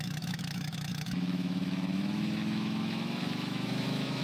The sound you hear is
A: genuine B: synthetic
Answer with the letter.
B